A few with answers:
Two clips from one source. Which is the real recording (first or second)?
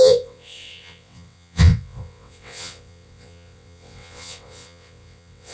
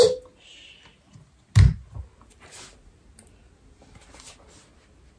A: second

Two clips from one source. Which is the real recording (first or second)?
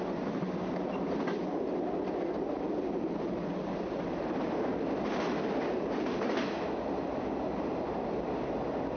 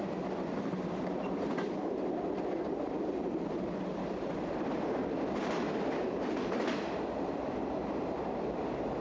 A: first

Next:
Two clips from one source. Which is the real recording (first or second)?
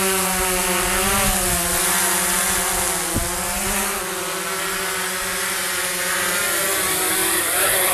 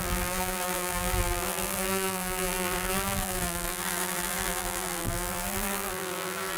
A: first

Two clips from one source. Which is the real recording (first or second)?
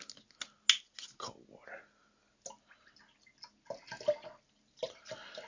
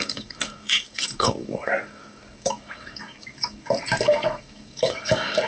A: first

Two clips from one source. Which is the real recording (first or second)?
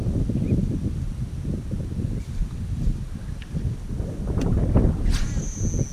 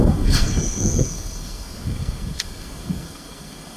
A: first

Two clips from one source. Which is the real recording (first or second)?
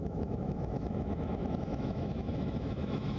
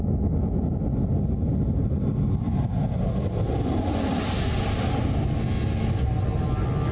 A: second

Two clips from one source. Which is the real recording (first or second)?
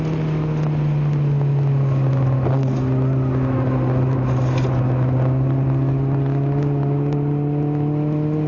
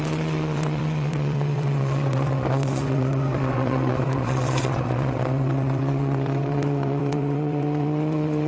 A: first